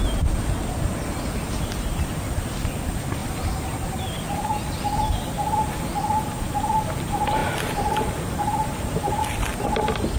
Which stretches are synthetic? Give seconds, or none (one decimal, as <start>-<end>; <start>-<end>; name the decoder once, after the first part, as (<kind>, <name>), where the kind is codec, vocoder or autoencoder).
1.1-2.3 (vocoder, BigVGAN v2); 7.4-9.2